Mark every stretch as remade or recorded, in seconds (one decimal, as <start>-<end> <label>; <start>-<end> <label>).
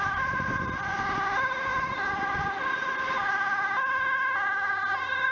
0.0-1.7 remade; 1.7-5.3 recorded